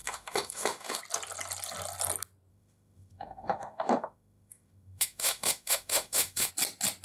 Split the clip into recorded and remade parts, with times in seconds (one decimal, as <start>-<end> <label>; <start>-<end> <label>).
0.0-1.0 remade; 1.0-2.5 recorded; 2.5-6.5 remade; 6.5-7.0 recorded